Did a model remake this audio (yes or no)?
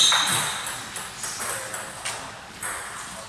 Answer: no